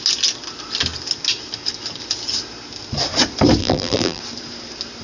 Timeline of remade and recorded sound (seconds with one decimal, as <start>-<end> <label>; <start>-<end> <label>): 0.0-3.6 recorded; 3.6-4.2 remade; 4.2-5.0 recorded